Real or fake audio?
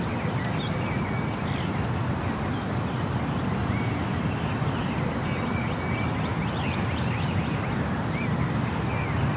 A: real